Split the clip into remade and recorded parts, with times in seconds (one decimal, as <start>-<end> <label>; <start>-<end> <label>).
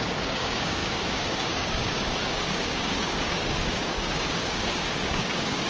0.0-5.7 remade